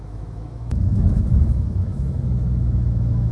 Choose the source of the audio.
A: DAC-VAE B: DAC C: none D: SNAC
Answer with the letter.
A